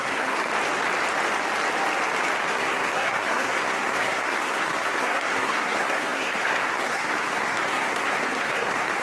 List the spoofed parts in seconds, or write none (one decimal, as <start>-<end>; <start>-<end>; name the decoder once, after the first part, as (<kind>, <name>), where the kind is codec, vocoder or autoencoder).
0.0-0.5 (codec, SNAC); 2.5-9.0

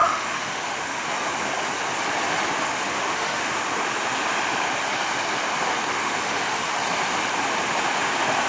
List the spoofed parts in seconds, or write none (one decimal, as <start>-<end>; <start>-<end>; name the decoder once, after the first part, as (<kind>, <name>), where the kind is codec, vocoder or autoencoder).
0.0-1.1 (autoencoder, DAC-VAE); 2.6-3.5; 6.0-6.7